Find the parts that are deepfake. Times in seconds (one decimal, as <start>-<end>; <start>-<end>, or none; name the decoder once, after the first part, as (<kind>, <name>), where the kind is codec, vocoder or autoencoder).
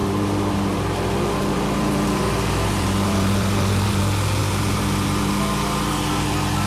0.0-4.0 (vocoder, BigVGAN v2); 4.4-5.3